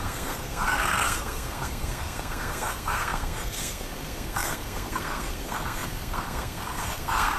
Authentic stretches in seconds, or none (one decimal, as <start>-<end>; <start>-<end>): none